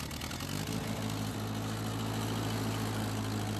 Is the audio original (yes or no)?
yes